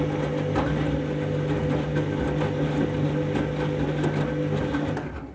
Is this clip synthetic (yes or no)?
no